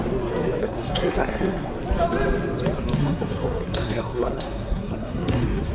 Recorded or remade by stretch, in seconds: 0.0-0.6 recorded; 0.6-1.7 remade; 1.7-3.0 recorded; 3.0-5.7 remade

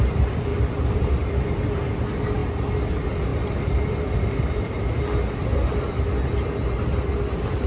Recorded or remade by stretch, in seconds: 0.0-7.7 recorded